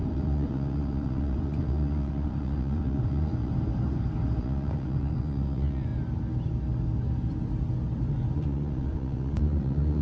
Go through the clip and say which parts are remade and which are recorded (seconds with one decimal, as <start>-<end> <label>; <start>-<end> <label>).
0.0-3.5 remade; 3.5-4.4 recorded; 4.4-5.9 remade; 5.9-8.1 recorded; 8.1-10.0 remade